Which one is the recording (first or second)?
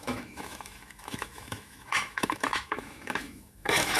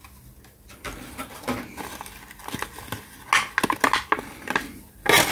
second